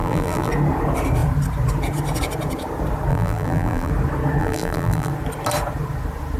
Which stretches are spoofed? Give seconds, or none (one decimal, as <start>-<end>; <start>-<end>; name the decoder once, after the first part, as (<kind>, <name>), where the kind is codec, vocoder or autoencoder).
0.0-0.5 (vocoder, BigVGAN v2); 3.1-3.9; 4.4-5.1